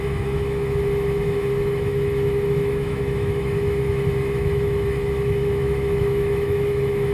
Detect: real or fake fake